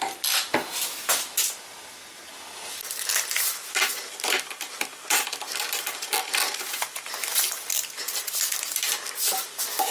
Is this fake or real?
real